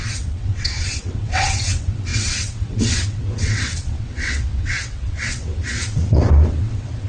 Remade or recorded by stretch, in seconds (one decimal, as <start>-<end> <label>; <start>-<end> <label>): 0.0-7.1 remade